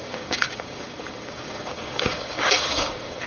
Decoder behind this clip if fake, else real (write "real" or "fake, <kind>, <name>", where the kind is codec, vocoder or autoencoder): fake, codec, DAC